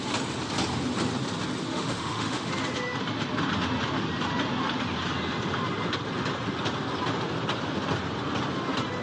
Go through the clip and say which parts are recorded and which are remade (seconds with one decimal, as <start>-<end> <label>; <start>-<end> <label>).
0.0-1.7 recorded; 1.7-2.5 remade; 2.5-9.0 recorded